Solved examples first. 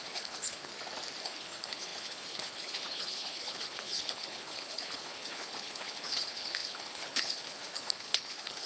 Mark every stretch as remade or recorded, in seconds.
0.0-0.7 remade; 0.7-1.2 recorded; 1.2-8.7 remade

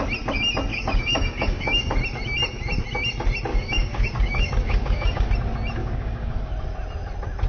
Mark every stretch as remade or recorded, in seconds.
0.0-0.7 recorded; 0.7-1.9 remade; 1.9-3.5 recorded; 3.5-5.3 remade; 5.3-5.8 recorded; 5.8-6.5 remade; 6.5-7.5 recorded

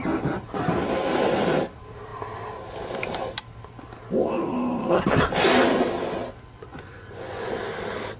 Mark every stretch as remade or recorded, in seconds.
0.0-6.7 recorded; 6.7-7.5 remade; 7.5-8.2 recorded